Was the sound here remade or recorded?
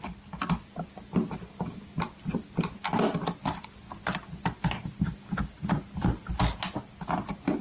recorded